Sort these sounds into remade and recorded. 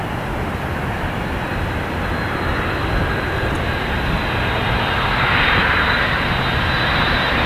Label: recorded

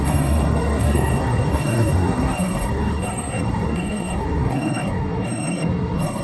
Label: remade